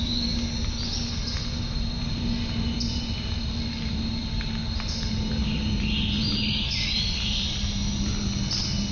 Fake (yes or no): no